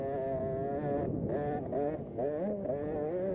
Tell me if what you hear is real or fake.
real